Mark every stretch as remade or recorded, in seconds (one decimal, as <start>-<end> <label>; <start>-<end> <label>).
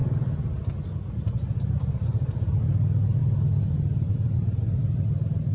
0.0-5.5 recorded